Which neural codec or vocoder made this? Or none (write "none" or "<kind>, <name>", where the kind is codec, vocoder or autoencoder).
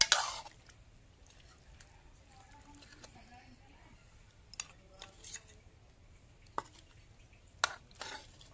none